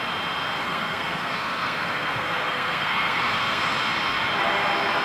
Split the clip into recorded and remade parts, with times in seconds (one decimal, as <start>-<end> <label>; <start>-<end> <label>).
0.0-0.6 recorded; 0.6-3.6 remade; 3.6-5.0 recorded